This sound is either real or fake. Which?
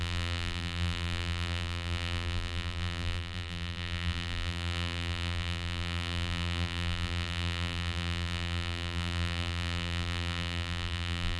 fake